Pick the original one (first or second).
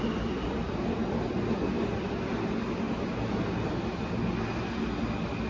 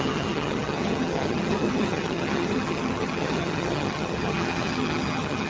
first